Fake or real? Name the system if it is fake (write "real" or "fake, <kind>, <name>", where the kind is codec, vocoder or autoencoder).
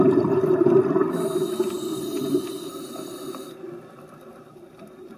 real